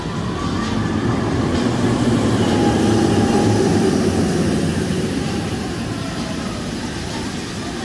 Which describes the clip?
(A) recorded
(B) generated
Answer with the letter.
A